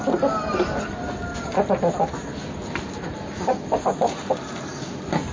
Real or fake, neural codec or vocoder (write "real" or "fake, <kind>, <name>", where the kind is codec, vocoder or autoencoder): real